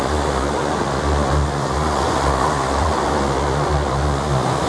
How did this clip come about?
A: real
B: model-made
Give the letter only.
B